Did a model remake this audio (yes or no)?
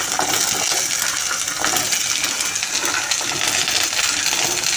no